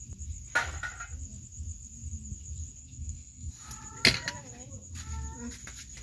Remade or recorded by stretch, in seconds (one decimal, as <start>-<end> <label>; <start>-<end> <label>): 0.0-2.8 recorded; 2.8-3.5 remade; 3.5-6.0 recorded